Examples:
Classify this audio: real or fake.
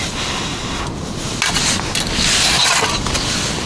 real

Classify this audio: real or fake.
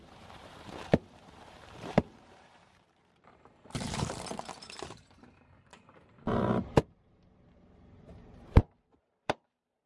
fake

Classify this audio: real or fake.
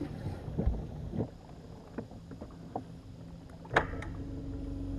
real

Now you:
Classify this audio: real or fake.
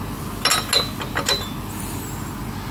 real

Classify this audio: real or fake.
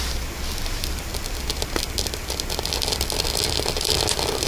real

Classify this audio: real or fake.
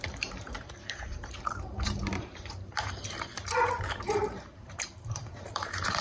fake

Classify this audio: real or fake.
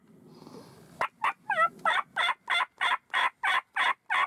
real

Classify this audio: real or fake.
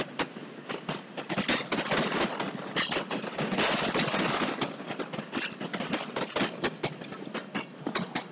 real